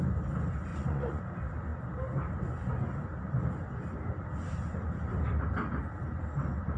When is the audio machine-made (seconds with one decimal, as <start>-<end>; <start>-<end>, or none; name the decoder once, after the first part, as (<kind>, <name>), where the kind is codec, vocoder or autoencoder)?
0.7-1.2 (vocoder, Vocos)